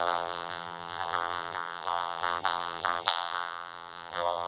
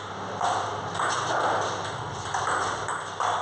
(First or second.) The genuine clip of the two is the second